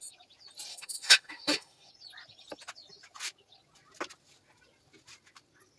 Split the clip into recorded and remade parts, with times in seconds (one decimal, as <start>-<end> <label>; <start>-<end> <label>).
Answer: 0.0-0.7 recorded; 0.7-1.9 remade; 1.9-5.8 recorded